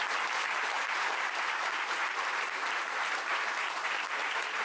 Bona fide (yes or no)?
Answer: no